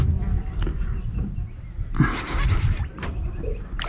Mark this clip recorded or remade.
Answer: recorded